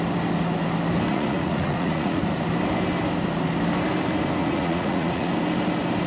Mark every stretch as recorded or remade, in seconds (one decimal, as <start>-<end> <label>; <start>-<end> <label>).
0.0-1.1 recorded; 1.1-2.2 remade; 2.2-4.4 recorded; 4.4-5.3 remade; 5.3-6.1 recorded